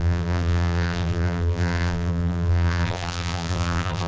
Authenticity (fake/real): fake